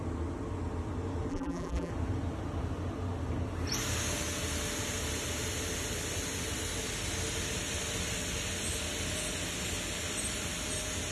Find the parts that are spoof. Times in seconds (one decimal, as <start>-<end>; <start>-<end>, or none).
1.3-1.9